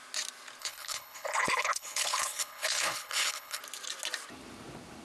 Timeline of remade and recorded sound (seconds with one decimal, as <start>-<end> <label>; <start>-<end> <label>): 0.0-0.6 recorded; 0.6-3.6 remade; 3.6-5.0 recorded